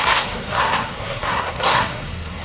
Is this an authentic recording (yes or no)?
no